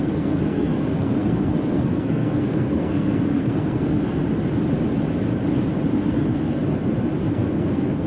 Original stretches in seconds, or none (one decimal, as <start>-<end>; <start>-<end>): 4.2-6.1; 6.6-7.3